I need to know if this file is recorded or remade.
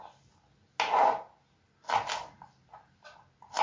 recorded